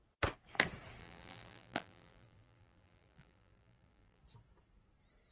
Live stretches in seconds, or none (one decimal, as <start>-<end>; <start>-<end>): 0.0-1.0; 4.2-5.3